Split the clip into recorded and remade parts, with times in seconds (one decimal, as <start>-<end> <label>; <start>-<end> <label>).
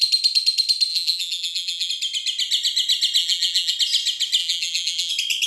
0.0-0.9 recorded; 0.9-1.9 remade; 1.9-3.2 recorded; 3.2-3.7 remade; 3.7-4.4 recorded; 4.4-5.1 remade; 5.1-5.5 recorded